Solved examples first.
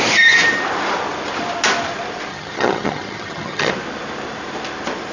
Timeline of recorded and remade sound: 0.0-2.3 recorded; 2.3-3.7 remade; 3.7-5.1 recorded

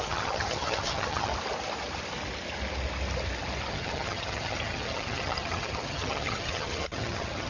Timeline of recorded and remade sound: 0.0-1.3 remade; 1.3-3.7 recorded; 3.7-7.5 remade

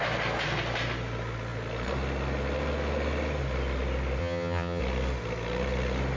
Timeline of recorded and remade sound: 0.0-4.2 recorded; 4.2-4.8 remade; 4.8-6.2 recorded

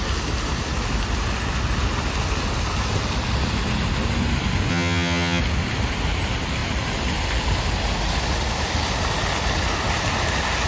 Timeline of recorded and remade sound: 0.0-4.7 recorded; 4.7-5.4 remade; 5.4-10.7 recorded

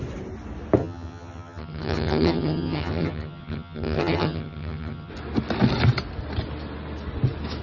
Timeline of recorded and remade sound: 0.0-0.8 recorded; 0.8-5.1 remade; 5.1-7.6 recorded

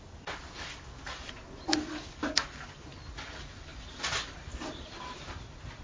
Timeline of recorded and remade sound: 0.0-5.8 recorded

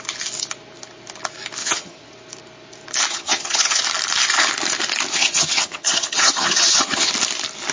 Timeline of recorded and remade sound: 0.0-1.6 recorded; 1.6-2.1 remade; 2.1-3.1 recorded; 3.1-3.8 remade; 3.8-5.1 recorded; 5.1-7.1 remade; 7.1-7.7 recorded